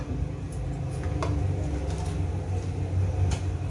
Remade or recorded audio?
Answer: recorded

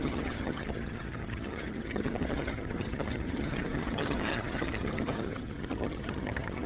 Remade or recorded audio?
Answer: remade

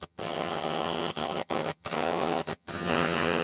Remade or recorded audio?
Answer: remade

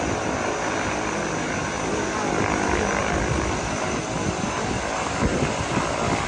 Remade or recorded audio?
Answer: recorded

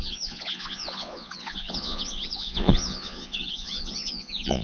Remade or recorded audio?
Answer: remade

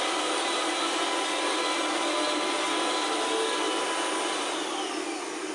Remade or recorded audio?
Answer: recorded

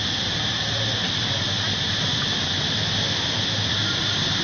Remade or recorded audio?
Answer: recorded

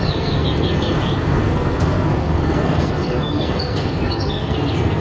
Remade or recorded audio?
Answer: remade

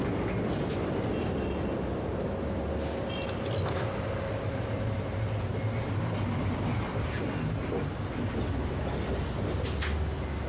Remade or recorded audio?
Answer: recorded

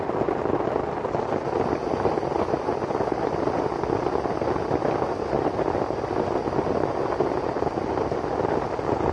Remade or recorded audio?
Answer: recorded